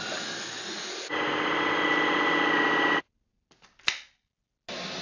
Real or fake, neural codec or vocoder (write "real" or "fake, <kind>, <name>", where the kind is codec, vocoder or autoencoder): real